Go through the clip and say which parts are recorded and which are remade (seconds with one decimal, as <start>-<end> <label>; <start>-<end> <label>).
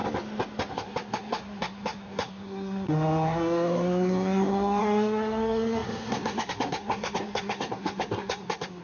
0.0-0.7 recorded; 0.7-8.8 remade